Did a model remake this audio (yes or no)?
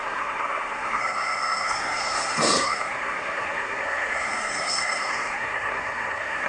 yes